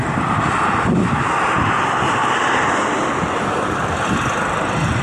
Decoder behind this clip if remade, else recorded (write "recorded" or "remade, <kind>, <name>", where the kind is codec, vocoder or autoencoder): recorded